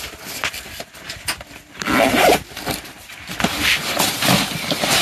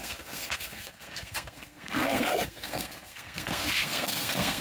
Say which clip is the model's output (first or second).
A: second